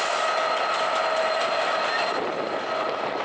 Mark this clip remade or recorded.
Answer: recorded